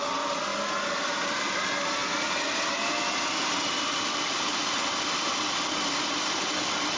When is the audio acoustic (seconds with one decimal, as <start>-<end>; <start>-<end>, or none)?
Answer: 0.5-1.0